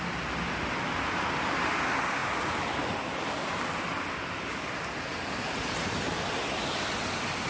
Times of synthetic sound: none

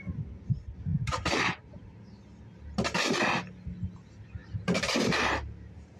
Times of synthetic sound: 0.9-1.8 (vocoder, BigVGAN v2); 4.4-6.0